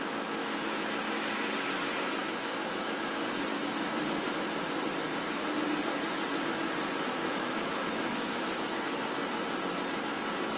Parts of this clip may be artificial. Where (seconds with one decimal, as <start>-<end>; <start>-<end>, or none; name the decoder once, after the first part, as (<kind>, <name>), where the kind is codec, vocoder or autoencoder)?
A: 0.4-1.5 (autoencoder, DAC-VAE); 2.2-3.2; 7.2-8.8